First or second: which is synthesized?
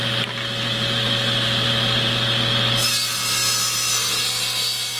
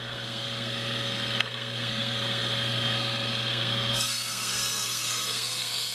second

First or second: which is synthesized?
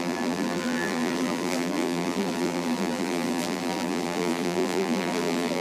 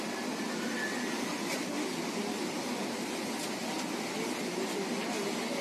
first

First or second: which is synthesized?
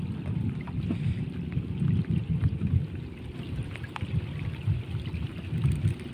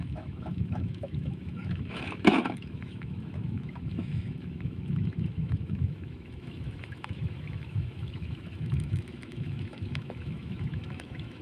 second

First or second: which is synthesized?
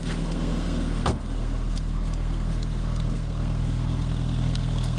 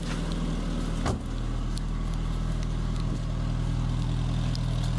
first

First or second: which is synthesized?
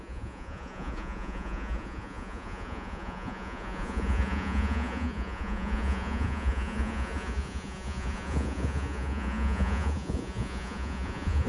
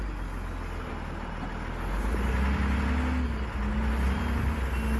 first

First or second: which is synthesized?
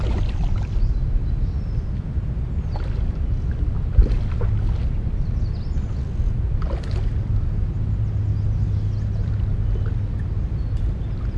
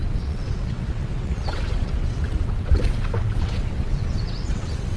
second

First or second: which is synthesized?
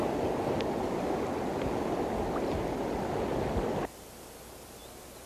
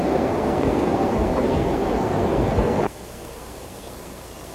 second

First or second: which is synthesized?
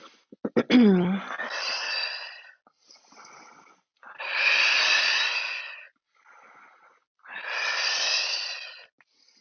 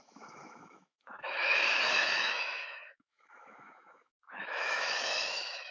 second